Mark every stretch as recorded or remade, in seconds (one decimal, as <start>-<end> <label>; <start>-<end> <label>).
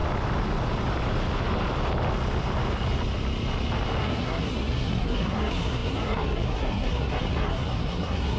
0.0-4.0 recorded; 4.0-8.4 remade